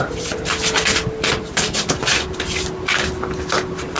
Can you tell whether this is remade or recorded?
recorded